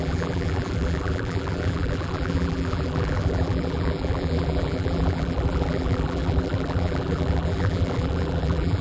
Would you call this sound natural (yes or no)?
no